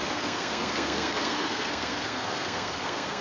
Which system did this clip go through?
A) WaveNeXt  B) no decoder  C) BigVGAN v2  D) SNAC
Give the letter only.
D